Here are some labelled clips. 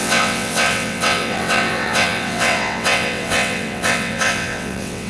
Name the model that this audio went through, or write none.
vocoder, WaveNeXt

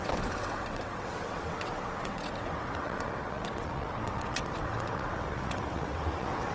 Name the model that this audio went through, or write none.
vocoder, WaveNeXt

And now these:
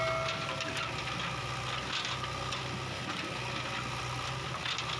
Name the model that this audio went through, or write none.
none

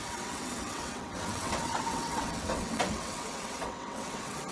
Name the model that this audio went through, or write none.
vocoder, WaveNeXt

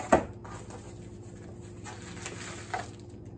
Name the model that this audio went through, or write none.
none